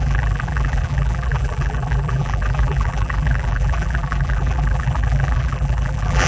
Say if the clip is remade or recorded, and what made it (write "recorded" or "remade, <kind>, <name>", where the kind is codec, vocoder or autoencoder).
remade, vocoder, BigVGAN v2